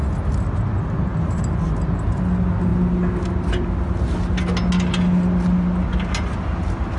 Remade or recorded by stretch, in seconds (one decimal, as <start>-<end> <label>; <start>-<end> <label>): 0.0-7.0 recorded